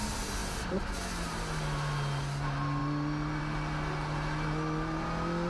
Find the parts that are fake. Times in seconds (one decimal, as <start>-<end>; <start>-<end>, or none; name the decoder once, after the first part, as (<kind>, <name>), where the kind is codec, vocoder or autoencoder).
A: none